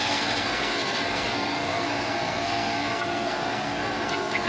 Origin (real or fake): fake